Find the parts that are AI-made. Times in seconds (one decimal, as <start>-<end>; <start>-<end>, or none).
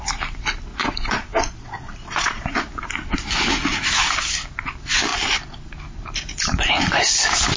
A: 0.7-2.5